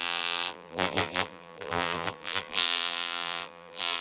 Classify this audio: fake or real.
fake